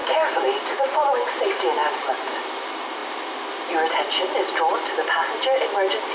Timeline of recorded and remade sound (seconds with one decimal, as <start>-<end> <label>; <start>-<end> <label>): 0.0-2.5 remade; 2.5-6.1 recorded